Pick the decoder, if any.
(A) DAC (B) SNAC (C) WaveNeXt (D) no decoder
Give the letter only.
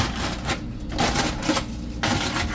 D